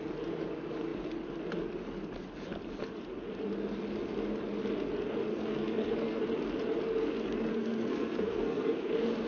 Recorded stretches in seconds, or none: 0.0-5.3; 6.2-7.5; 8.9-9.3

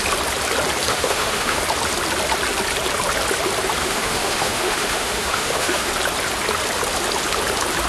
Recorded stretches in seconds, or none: 0.0-0.9; 1.6-3.8; 5.9-7.9

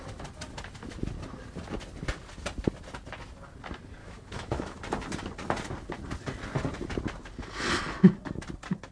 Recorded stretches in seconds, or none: 0.0-4.0; 4.8-8.9

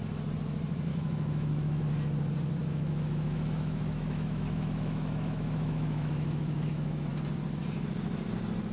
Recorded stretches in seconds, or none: 0.0-0.9; 1.8-2.6; 7.1-8.7

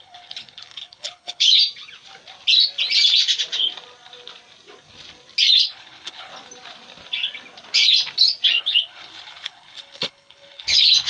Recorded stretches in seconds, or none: 1.6-5.6; 6.3-8.6

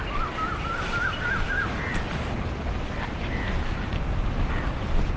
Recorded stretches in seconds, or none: 0.0-2.1; 3.2-5.2